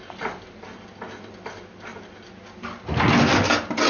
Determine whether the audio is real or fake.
real